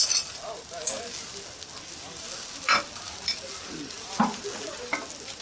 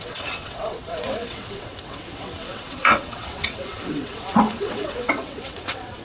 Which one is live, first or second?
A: first